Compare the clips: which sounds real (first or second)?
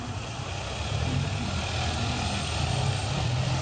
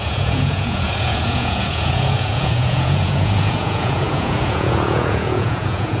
first